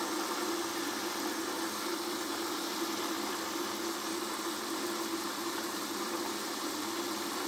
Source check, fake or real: real